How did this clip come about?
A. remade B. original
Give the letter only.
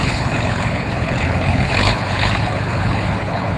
A